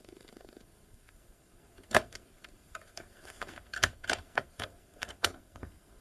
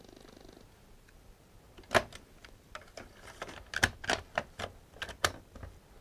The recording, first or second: second